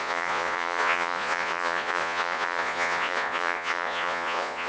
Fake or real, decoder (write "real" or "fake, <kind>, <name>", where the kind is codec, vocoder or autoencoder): fake, vocoder, Vocos